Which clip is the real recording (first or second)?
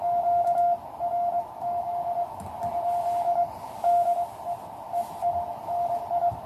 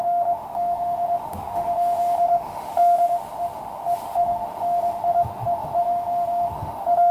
first